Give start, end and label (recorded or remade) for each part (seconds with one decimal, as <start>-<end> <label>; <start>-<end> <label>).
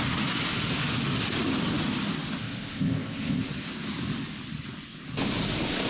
0.0-2.4 recorded; 2.4-3.4 remade; 3.4-5.9 recorded